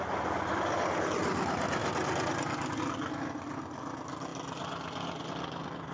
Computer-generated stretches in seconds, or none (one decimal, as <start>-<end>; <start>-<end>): none